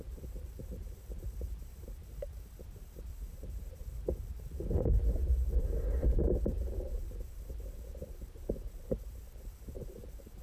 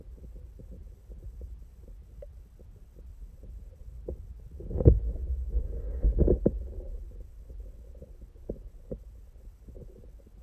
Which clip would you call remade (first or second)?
first